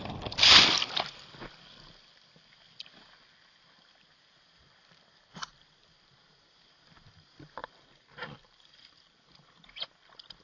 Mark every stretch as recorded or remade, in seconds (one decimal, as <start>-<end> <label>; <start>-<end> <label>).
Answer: 0.0-2.3 remade; 2.3-7.6 recorded; 7.6-10.4 remade